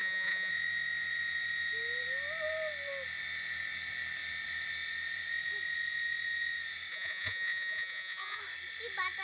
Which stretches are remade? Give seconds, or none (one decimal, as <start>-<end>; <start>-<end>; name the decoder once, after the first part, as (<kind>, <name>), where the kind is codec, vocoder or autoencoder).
0.0-0.5 (vocoder, Vocos); 6.9-8.4